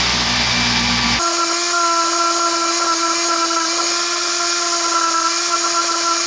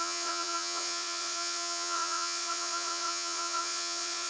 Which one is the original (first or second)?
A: first